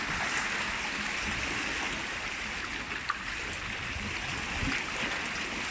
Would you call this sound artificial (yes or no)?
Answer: no